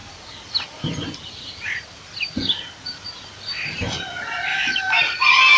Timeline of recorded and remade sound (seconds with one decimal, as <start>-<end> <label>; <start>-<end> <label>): 0.0-4.5 recorded; 4.5-5.0 remade; 5.0-5.6 recorded